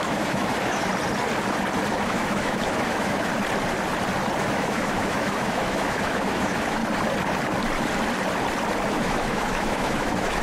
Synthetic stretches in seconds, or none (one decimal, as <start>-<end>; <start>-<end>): 0.0-0.9; 1.9-3.3; 4.4-6.8; 8.9-10.4